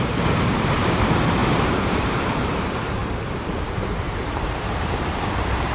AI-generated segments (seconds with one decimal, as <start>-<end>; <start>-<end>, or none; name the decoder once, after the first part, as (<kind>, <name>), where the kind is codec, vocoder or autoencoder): 0.0-5.7 (vocoder, BigVGAN v2)